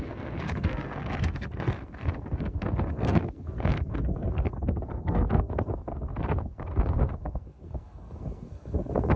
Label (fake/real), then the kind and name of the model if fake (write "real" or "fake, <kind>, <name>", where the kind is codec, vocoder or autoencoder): fake, codec, SNAC